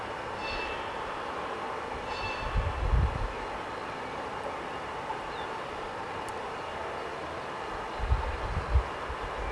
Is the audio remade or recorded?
remade